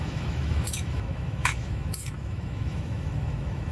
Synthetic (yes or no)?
yes